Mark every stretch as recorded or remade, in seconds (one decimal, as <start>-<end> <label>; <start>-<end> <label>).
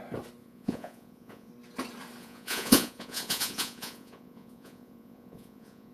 0.0-0.4 recorded; 0.4-1.5 remade; 1.5-2.2 recorded; 2.2-5.9 remade